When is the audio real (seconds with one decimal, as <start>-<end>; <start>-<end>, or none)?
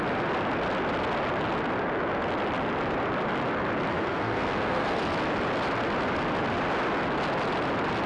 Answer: 0.0-3.9; 5.0-8.1